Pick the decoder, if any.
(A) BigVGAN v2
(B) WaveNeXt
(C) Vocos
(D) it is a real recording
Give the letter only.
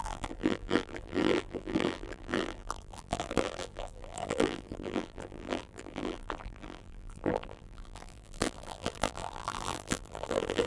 A